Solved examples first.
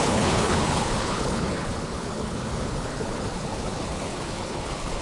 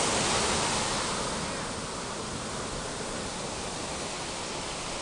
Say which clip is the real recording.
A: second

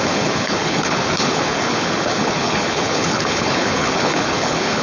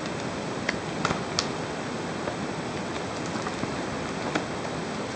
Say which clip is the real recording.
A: second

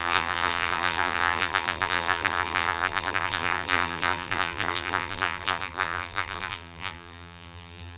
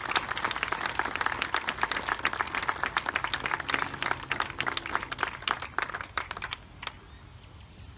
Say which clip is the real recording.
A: second